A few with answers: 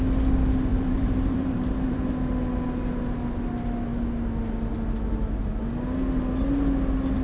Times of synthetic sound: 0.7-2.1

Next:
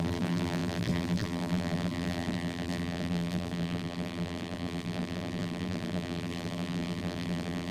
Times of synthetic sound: 0.0-7.7

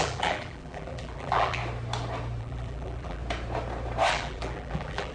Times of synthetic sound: 0.0-1.6; 2.4-3.2; 4.1-5.1

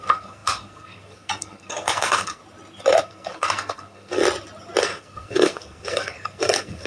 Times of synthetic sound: 0.0-2.4; 3.0-4.2; 4.8-6.9